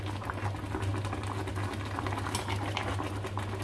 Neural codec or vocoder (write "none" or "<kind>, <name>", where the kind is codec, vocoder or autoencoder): none